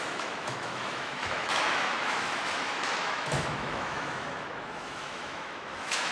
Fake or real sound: fake